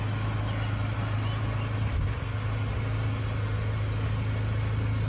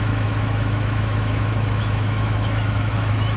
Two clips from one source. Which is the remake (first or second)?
second